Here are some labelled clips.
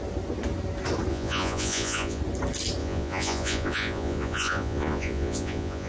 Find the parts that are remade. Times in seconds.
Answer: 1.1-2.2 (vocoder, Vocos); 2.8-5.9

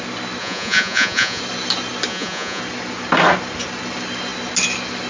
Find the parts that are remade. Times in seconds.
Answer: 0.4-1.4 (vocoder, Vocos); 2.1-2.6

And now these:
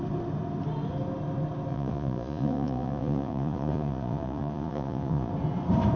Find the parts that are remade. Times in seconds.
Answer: 1.7-5.3 (vocoder, Vocos)

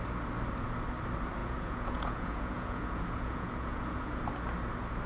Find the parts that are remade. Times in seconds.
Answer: 1.4-4.2 (vocoder, Vocos)